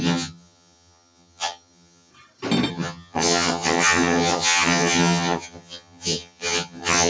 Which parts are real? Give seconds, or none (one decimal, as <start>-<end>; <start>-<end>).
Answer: 2.1-2.7